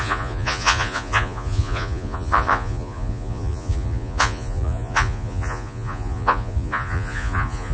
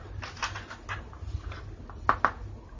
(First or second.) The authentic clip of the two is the second